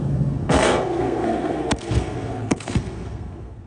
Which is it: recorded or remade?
remade